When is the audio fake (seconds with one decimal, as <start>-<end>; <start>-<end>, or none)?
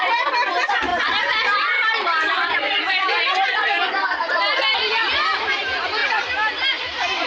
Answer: 0.9-2.8; 4.7-5.6; 6.0-7.3